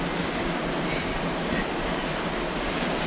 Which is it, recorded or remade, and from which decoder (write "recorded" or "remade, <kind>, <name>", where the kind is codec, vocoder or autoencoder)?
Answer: recorded